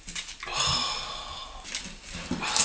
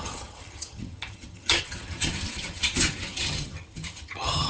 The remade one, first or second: second